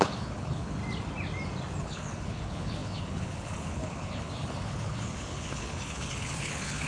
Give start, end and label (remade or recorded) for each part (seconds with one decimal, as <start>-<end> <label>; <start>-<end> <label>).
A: 0.0-0.8 remade; 0.8-1.8 recorded; 1.8-6.9 remade